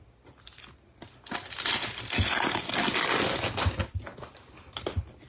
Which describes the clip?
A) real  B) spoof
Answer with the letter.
A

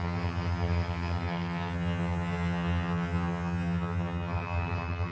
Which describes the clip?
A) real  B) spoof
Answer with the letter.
B